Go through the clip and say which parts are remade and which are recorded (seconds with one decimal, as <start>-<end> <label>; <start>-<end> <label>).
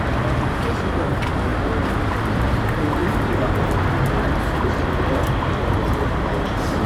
0.0-6.9 recorded